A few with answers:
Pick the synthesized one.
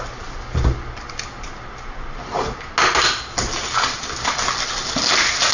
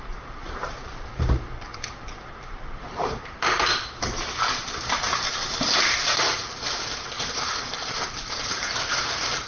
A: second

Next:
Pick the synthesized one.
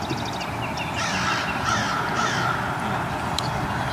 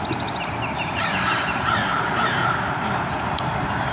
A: second